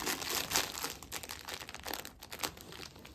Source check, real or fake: real